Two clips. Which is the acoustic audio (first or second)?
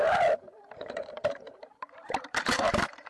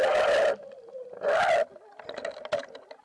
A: second